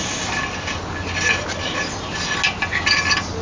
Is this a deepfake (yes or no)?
no